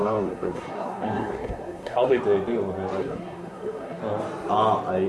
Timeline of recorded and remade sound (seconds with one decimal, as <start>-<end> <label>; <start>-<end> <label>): 0.0-2.2 remade; 2.2-3.0 recorded; 3.0-4.0 remade; 4.0-5.1 recorded